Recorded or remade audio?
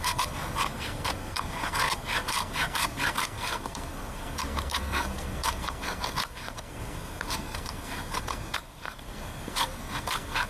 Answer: remade